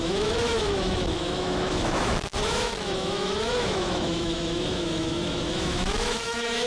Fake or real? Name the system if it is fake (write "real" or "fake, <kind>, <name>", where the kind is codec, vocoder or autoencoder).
fake, autoencoder, DAC-VAE